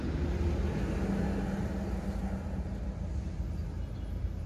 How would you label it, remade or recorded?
recorded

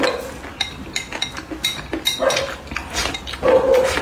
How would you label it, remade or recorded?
recorded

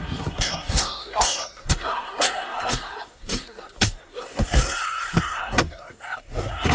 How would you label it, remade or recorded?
remade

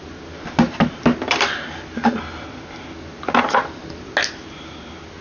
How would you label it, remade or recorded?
recorded